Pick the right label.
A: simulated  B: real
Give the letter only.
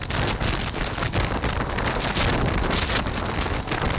B